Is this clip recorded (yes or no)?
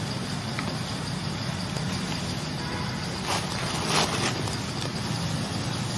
yes